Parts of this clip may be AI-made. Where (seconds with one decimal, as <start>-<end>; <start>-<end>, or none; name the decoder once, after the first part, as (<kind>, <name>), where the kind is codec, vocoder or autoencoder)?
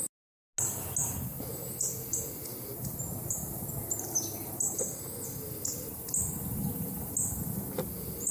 none